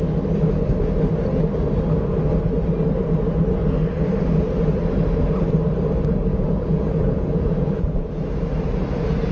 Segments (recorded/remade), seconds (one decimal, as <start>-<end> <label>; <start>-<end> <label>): 0.0-6.3 recorded; 6.3-8.2 remade; 8.2-9.3 recorded